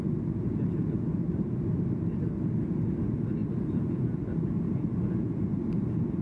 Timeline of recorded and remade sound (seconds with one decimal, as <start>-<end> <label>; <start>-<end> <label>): 0.0-6.2 recorded